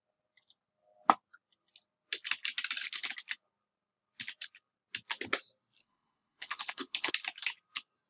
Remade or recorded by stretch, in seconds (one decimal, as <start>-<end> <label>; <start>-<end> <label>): 0.0-5.8 recorded; 5.8-7.1 remade; 7.1-8.1 recorded